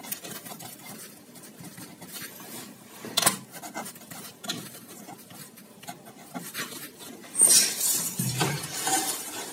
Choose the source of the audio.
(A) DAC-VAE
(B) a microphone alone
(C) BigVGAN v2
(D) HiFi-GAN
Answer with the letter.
C